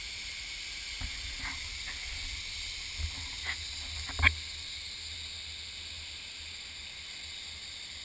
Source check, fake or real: real